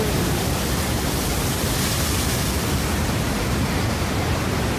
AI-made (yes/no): no